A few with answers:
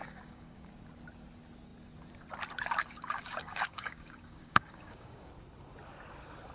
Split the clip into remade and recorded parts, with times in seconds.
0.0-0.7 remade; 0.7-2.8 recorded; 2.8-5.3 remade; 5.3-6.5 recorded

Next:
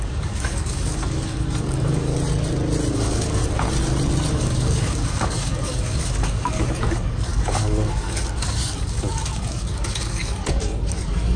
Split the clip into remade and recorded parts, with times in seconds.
0.0-2.1 remade; 2.1-2.9 recorded; 2.9-3.4 remade; 3.4-4.3 recorded; 4.3-11.4 remade

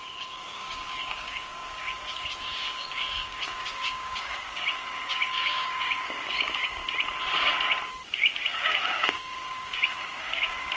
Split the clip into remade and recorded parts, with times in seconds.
0.0-6.8 remade; 6.8-7.9 recorded; 7.9-10.8 remade

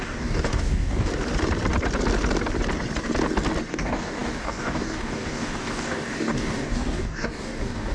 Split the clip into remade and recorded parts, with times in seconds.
0.0-1.1 remade; 1.1-3.7 recorded; 3.7-7.9 remade

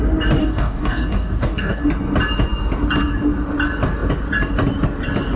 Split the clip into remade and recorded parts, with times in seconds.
0.0-0.4 recorded; 0.4-1.8 remade; 1.8-5.4 recorded

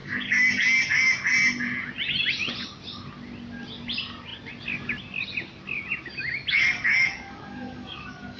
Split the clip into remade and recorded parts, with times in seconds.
0.0-1.1 remade; 1.1-6.5 recorded; 6.5-8.4 remade

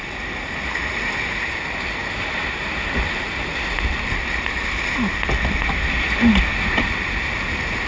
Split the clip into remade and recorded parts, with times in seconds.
0.0-7.9 recorded

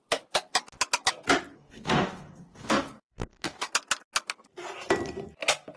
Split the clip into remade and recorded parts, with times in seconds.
0.0-1.5 recorded; 1.5-3.7 remade; 3.7-5.8 recorded